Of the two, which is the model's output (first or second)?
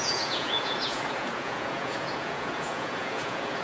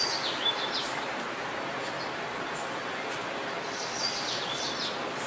first